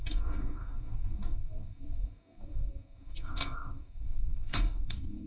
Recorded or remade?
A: remade